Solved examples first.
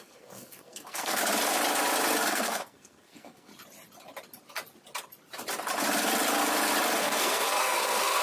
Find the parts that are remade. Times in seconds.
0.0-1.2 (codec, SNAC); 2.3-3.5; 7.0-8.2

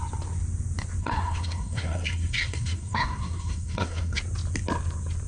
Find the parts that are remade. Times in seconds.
1.0-4.2 (codec, SNAC)